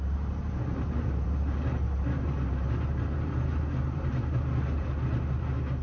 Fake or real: fake